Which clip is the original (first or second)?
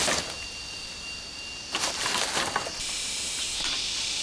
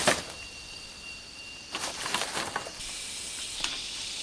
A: first